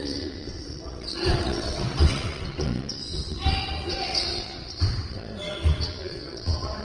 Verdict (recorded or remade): remade